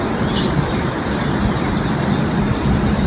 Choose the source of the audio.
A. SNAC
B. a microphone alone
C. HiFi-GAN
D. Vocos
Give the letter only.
B